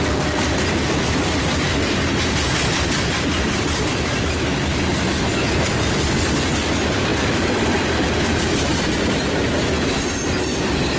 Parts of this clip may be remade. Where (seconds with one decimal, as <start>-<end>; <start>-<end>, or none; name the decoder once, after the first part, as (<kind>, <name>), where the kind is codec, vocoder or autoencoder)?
none